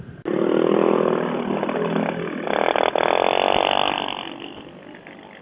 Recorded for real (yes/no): yes